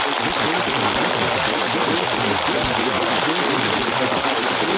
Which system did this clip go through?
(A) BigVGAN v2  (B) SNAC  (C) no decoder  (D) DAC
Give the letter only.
C